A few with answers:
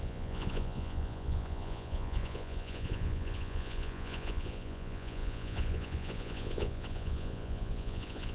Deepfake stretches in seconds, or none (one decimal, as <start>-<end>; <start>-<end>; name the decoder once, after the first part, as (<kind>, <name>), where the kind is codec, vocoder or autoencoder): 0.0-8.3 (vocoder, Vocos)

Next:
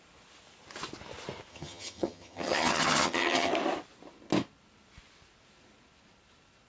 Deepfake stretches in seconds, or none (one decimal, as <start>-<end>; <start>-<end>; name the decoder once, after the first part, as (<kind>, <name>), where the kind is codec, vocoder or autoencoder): 1.5-3.5 (vocoder, HiFi-GAN)

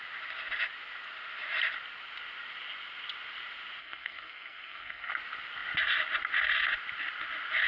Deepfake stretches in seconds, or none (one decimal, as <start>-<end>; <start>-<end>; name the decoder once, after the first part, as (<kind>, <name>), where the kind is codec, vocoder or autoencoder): 3.8-5.1 (codec, SNAC)

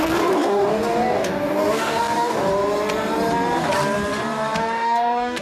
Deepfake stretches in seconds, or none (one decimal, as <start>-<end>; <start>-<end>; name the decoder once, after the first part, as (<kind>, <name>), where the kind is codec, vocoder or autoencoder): 0.0-2.5 (codec, DAC); 4.6-5.4

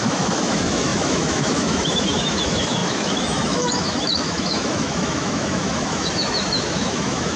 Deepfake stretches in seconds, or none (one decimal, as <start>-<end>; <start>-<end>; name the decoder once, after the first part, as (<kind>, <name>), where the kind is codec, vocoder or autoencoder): 0.0-7.4 (autoencoder, DAC-VAE)

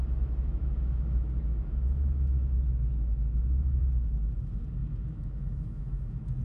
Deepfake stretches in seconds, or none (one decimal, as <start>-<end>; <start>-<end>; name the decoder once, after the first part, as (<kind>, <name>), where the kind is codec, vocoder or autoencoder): 0.0-3.8 (autoencoder, DAC-VAE); 4.8-6.4